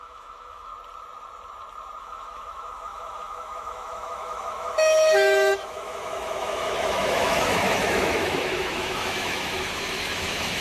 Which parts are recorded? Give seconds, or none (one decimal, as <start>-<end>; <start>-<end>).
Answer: 0.7-2.0